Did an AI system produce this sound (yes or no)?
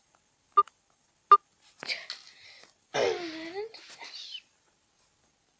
no